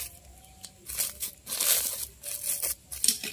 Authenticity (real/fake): real